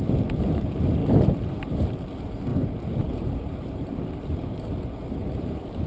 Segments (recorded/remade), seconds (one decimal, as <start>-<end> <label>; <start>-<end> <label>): 0.0-1.0 recorded; 1.0-1.9 remade; 1.9-2.5 recorded; 2.5-4.8 remade; 4.8-5.2 recorded; 5.2-5.9 remade